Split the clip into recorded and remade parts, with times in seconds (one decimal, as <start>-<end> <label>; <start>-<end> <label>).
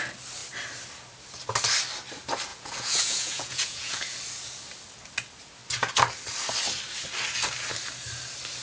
0.0-2.5 recorded; 2.5-4.2 remade; 4.2-8.6 recorded